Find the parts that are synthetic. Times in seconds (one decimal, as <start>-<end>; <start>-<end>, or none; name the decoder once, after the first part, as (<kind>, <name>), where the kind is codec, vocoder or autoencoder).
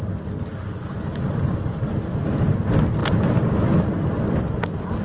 none